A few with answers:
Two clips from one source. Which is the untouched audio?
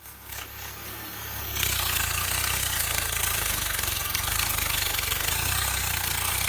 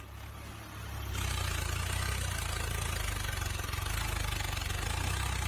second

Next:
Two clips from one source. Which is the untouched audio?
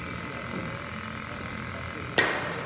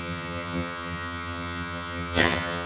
first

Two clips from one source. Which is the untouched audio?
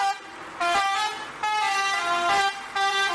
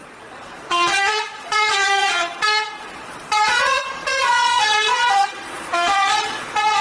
first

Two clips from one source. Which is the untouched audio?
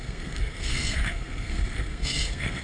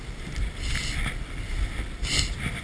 second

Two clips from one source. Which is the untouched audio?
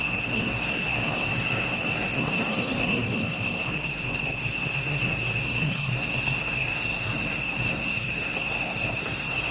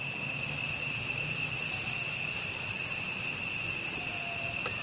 second